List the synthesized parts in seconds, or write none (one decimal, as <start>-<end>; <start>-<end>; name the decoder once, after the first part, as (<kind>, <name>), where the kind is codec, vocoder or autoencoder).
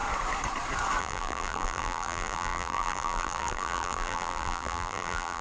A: 1.0-5.4 (vocoder, BigVGAN v2)